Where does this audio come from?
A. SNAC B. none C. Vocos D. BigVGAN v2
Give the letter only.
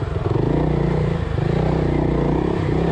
B